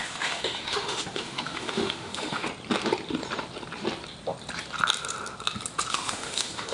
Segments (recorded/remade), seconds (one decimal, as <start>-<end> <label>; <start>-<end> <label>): 0.0-2.5 remade; 2.5-5.9 recorded; 5.9-6.7 remade

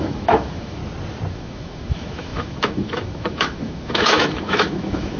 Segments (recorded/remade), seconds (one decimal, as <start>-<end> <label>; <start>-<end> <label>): 0.0-0.8 remade; 0.8-1.3 recorded; 1.3-5.2 remade

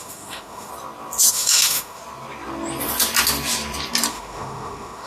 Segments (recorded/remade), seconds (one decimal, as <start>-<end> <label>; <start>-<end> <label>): 0.0-0.7 remade; 0.7-1.3 recorded; 1.3-2.0 remade; 2.0-4.1 recorded; 4.1-5.1 remade